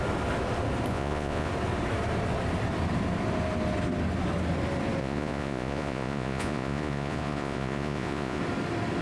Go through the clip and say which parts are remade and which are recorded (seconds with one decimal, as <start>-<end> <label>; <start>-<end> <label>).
0.0-0.9 recorded; 0.9-1.5 remade; 1.5-5.0 recorded; 5.0-8.4 remade; 8.4-9.0 recorded